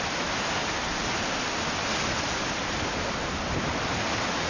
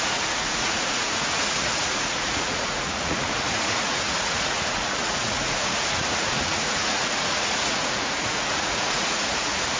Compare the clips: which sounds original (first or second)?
first